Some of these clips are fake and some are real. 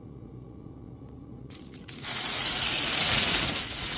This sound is fake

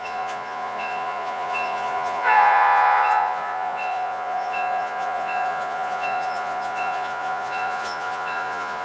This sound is fake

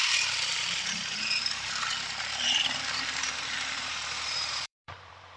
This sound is fake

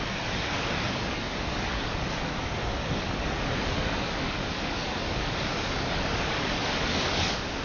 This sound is fake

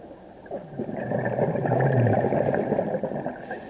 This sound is real